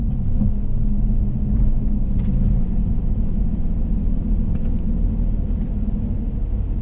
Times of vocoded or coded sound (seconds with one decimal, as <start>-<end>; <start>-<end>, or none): none